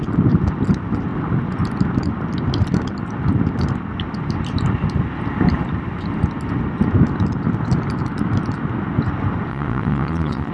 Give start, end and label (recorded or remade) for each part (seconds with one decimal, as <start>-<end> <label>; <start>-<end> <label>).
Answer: 0.0-9.5 recorded; 9.5-10.5 remade